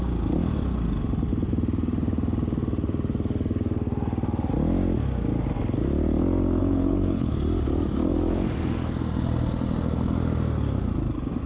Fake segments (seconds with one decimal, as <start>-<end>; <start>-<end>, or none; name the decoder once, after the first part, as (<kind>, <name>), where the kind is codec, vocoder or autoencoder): 6.6-7.3 (codec, HILCodec)